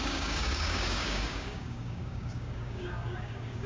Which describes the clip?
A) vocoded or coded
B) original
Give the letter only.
A